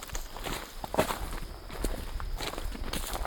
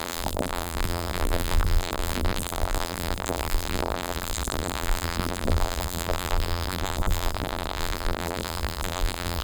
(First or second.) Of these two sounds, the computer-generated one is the second